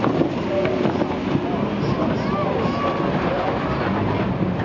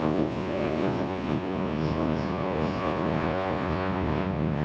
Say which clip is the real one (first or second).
first